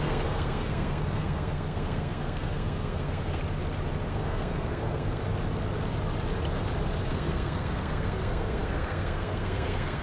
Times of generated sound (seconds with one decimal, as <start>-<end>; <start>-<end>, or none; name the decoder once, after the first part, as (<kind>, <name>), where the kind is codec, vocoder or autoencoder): 0.0-3.4 (codec, SNAC); 4.1-5.2; 7.1-10.0